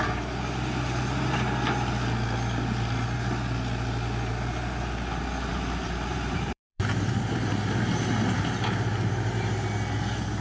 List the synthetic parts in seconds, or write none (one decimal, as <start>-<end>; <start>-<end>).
5.5-7.1